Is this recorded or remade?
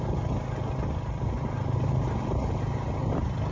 recorded